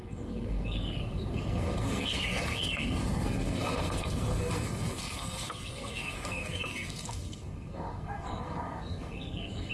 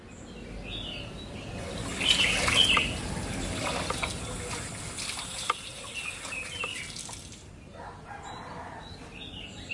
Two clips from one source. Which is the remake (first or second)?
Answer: first